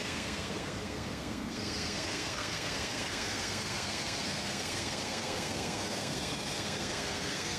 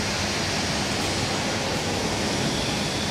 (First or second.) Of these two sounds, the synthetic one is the first